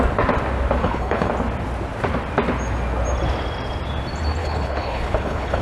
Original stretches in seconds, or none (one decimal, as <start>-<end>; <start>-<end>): 0.0-0.8; 1.3-4.4